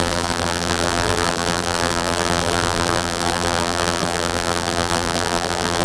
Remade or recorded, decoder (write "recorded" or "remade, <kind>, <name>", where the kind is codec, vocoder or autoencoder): remade, vocoder, BigVGAN v2